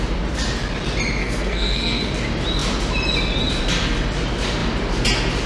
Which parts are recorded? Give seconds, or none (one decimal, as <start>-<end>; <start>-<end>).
0.0-1.2; 2.1-5.5